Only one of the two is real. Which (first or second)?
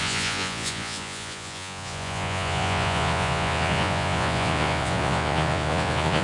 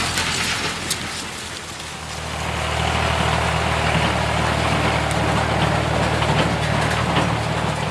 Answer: second